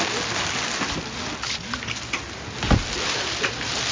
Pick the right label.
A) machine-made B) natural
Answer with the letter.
B